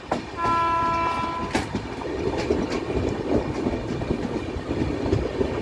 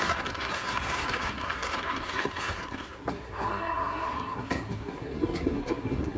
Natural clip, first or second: first